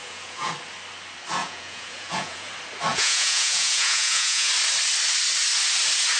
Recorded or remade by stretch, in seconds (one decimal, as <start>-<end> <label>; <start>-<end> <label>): 0.0-0.5 remade; 0.5-1.4 recorded; 1.4-2.5 remade; 2.5-2.9 recorded; 2.9-4.5 remade; 4.5-6.2 recorded